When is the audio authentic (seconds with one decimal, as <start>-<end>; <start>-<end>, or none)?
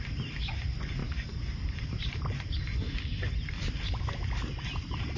0.0-5.2